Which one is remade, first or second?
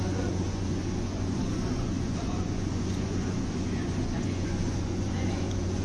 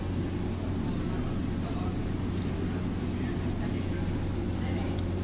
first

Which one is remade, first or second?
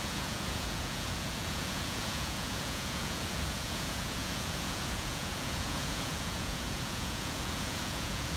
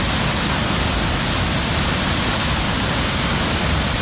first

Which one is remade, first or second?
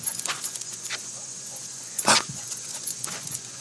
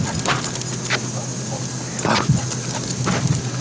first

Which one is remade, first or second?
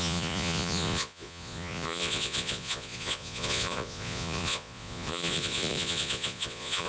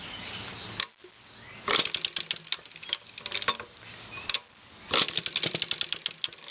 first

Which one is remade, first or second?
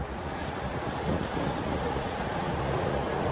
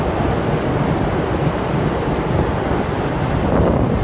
first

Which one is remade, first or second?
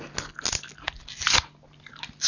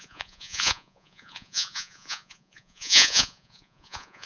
second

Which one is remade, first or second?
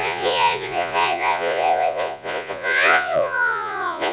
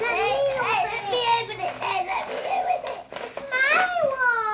first